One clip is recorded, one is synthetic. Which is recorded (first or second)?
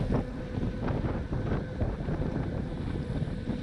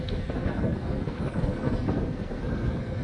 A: first